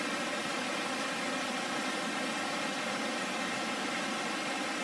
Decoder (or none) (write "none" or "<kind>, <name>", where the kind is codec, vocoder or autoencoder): none